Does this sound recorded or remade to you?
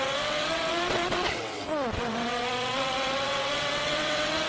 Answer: remade